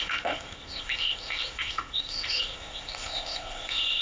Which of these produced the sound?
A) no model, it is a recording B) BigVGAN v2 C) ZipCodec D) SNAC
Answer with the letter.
C